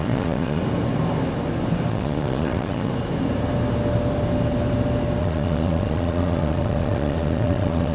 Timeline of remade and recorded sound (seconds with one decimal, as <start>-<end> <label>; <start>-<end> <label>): 0.0-0.6 remade; 0.6-1.9 recorded; 1.9-2.9 remade; 2.9-5.2 recorded; 5.2-7.9 remade